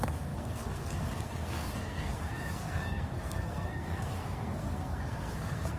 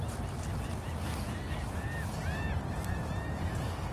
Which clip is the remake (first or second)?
first